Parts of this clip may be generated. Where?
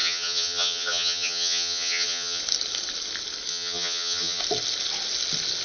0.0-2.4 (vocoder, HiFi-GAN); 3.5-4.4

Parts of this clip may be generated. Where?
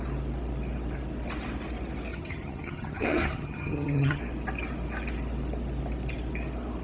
2.1-4.2 (vocoder, HiFi-GAN)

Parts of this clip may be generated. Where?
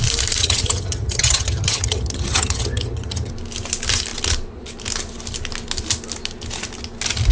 0.4-3.3 (vocoder, HiFi-GAN)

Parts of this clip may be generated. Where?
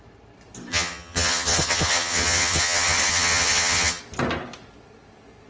0.7-4.0 (vocoder, HiFi-GAN)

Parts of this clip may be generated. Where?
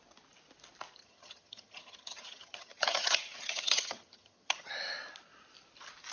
1.0-4.7 (vocoder, HiFi-GAN)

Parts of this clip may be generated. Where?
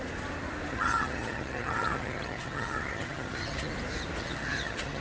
0.7-3.7 (vocoder, HiFi-GAN); 4.2-5.0